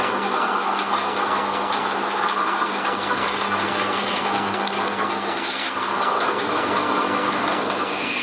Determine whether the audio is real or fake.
fake